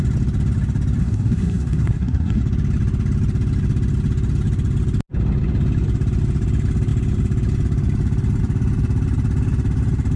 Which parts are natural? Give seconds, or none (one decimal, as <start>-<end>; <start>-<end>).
0.0-1.0; 2.4-10.2